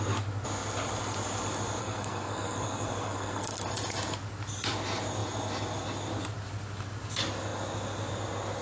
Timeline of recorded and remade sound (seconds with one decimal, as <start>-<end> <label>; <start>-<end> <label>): 0.0-1.8 recorded; 1.8-3.7 remade; 3.7-8.6 recorded